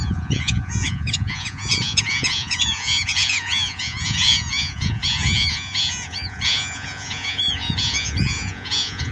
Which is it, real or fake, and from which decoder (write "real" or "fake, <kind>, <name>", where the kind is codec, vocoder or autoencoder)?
fake, vocoder, Vocos